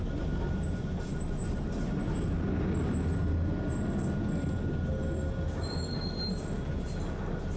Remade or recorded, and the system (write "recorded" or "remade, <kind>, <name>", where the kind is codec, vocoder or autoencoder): recorded